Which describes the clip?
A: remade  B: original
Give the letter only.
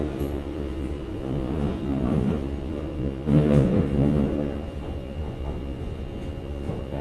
A